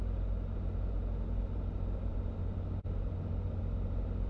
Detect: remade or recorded recorded